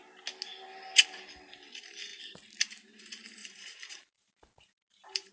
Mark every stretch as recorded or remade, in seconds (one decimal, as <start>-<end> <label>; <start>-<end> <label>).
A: 0.0-3.4 recorded; 3.4-5.3 remade